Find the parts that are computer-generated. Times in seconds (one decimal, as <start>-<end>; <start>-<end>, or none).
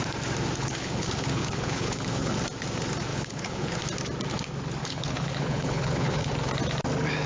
0.6-2.3; 3.1-3.8; 4.8-6.3